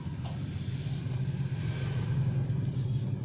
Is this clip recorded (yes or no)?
yes